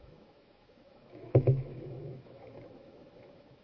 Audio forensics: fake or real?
fake